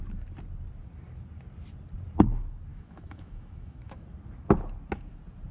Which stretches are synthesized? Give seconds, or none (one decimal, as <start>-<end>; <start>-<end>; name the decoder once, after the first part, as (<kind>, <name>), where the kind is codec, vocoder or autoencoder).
2.7-4.1 (autoencoder, DAC-VAE)